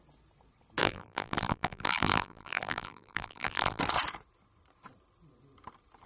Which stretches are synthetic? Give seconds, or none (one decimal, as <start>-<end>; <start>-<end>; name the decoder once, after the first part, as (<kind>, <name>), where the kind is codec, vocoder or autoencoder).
0.8-3.8 (vocoder, BigVGAN v2)